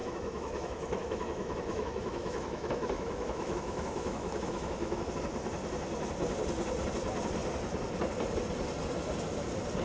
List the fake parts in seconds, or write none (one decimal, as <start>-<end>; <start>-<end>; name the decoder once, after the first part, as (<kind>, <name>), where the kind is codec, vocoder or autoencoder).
0.0-5.1 (autoencoder, DAC-VAE)